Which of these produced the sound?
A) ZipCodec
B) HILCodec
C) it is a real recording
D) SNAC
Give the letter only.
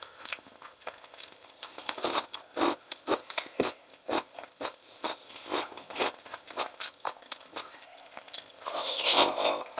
A